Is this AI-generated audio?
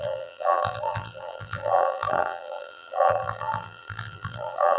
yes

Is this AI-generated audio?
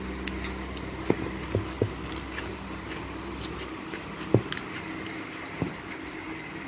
no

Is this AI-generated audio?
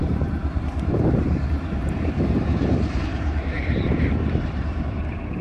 yes